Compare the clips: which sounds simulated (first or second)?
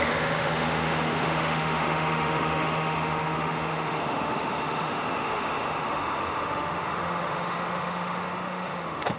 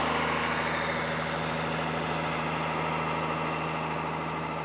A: first